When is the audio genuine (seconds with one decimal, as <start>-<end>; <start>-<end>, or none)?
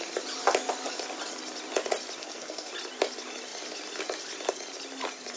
0.0-2.2; 2.7-5.4